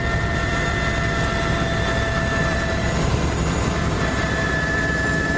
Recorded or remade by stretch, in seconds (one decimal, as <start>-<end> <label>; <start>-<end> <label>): 0.0-0.7 remade; 0.7-2.4 recorded; 2.4-2.8 remade; 2.8-3.4 recorded; 3.4-5.4 remade